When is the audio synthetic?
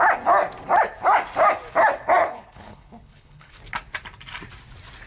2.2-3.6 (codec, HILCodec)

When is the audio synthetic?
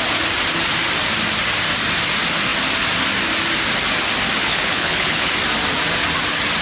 4.4-5.3 (codec, HILCodec)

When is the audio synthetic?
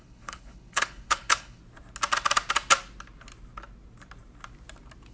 0.0-1.6 (codec, HILCodec)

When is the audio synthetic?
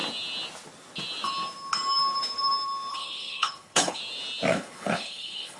2.9-4.0 (codec, HILCodec); 4.5-5.6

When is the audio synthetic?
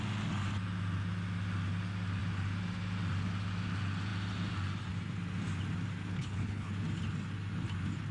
6.1-6.7 (codec, HILCodec)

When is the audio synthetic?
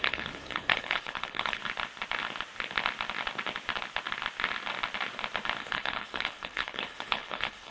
0.0-1.6 (codec, HILCodec); 5.6-7.7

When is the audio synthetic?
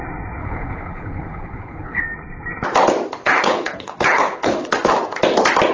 0.4-2.0 (codec, HILCodec); 3.2-4.7